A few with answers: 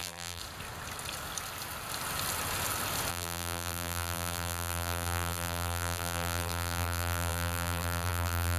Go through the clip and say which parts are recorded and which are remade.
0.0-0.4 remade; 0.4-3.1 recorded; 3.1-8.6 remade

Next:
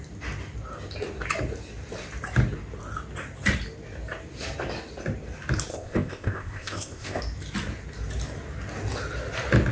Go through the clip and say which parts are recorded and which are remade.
0.0-5.7 recorded; 5.7-7.2 remade; 7.2-9.7 recorded

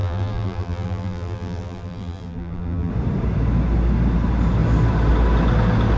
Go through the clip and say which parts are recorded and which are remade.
0.0-2.9 remade; 2.9-6.0 recorded